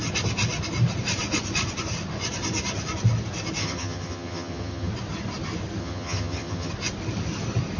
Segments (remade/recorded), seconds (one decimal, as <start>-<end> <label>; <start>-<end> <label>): 0.0-3.6 recorded; 3.6-4.9 remade; 4.9-5.8 recorded; 5.8-6.7 remade; 6.7-7.8 recorded

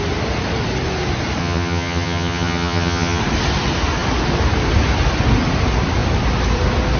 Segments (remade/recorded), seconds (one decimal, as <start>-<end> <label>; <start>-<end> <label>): 0.0-1.4 recorded; 1.4-3.2 remade; 3.2-7.0 recorded

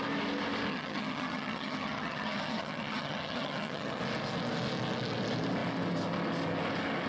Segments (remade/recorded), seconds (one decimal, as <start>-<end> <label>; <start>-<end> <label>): 0.0-0.7 recorded; 0.7-4.0 remade; 4.0-7.1 recorded

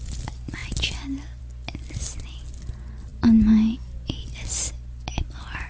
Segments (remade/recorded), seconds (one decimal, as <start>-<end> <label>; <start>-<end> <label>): 0.0-5.7 recorded

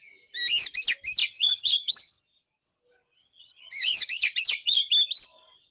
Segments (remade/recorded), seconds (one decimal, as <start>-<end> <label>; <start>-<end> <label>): 0.0-1.2 recorded; 1.2-2.2 remade; 2.2-3.2 recorded; 3.2-4.9 remade; 4.9-5.7 recorded